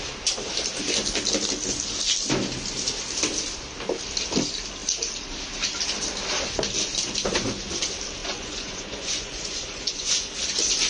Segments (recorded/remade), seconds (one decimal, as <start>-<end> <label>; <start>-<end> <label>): 0.0-8.2 recorded; 8.2-10.3 remade; 10.3-10.9 recorded

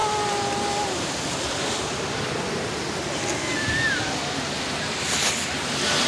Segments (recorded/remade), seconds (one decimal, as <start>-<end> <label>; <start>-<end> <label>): 0.0-6.1 recorded

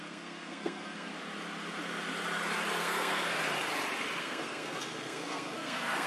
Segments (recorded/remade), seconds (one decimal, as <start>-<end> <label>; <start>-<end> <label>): 0.0-1.1 remade; 1.1-2.8 recorded; 2.8-3.4 remade; 3.4-4.2 recorded; 4.2-6.1 remade

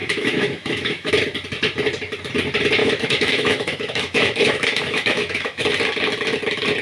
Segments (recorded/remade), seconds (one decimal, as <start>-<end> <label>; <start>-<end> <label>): 0.0-1.1 remade; 1.1-2.8 recorded; 2.8-5.7 remade; 5.7-6.8 recorded

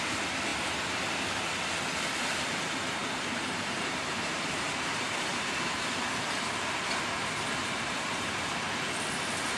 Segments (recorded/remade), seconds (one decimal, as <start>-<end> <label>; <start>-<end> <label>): 0.0-3.0 recorded; 3.0-6.0 remade; 6.0-7.6 recorded; 7.6-8.4 remade; 8.4-9.6 recorded

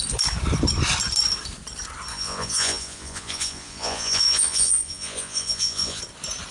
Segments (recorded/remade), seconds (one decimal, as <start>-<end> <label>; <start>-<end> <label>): 0.0-2.1 recorded; 2.1-6.0 remade; 6.0-6.5 recorded

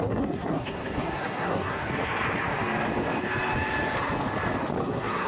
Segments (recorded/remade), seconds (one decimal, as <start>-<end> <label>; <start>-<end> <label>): 0.0-1.8 remade; 1.8-4.8 recorded; 4.8-5.3 remade

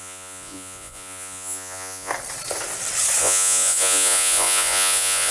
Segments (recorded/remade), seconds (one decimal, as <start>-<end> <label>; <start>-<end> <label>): 0.0-2.1 remade; 2.1-3.2 recorded; 3.2-5.3 remade